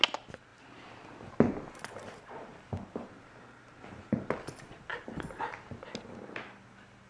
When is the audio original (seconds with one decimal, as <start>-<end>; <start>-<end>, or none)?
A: 0.0-0.5; 1.3-2.5; 3.1-7.1